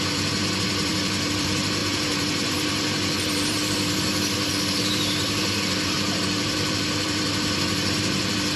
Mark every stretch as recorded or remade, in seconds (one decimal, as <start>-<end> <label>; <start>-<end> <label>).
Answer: 0.0-8.6 remade